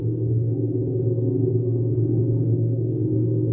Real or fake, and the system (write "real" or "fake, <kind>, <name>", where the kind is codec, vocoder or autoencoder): fake, codec, SNAC